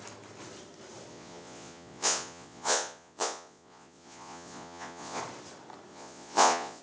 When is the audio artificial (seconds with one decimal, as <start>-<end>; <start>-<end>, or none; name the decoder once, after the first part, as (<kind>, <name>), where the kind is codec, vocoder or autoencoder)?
1.1-5.2 (vocoder, Vocos); 5.9-6.8